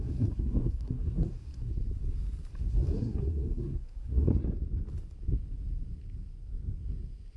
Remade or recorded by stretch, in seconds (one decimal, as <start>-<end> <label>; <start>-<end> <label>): 0.0-1.7 remade; 1.7-2.6 recorded; 2.6-4.3 remade; 4.3-7.4 recorded